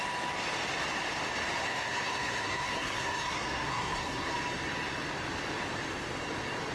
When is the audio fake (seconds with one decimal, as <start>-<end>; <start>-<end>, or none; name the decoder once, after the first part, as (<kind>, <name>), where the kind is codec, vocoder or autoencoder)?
1.6-4.3 (codec, SNAC)